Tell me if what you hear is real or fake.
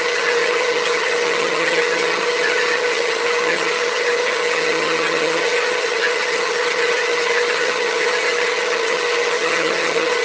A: fake